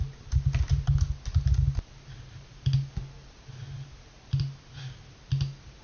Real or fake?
real